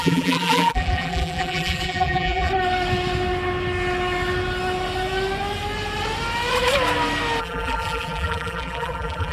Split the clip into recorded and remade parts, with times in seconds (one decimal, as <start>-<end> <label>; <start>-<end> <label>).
0.0-2.5 remade; 2.5-7.4 recorded; 7.4-9.3 remade

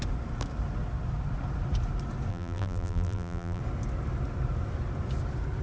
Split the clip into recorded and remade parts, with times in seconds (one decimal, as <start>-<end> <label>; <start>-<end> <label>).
0.0-2.3 recorded; 2.3-3.6 remade; 3.6-5.6 recorded

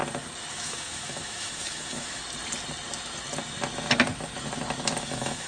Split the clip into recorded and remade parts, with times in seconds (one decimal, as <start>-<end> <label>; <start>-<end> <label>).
0.0-0.5 recorded; 0.5-2.2 remade; 2.2-5.0 recorded; 5.0-5.5 remade

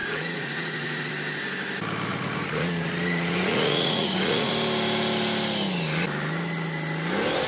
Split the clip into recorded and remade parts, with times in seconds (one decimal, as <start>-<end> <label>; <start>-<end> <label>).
0.0-1.1 remade; 1.1-2.1 recorded; 2.1-4.5 remade; 4.5-7.5 recorded

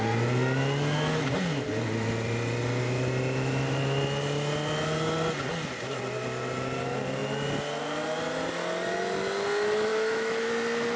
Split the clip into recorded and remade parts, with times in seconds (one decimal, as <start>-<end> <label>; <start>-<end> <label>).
0.0-9.9 recorded; 9.9-10.5 remade; 10.5-11.0 recorded

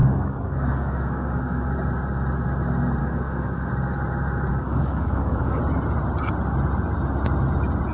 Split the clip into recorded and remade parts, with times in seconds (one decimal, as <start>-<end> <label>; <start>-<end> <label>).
0.0-1.7 remade; 1.7-3.0 recorded; 3.0-3.7 remade; 3.7-4.5 recorded; 4.5-5.6 remade; 5.6-7.9 recorded